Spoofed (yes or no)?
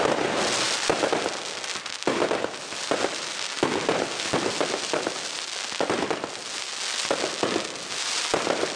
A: no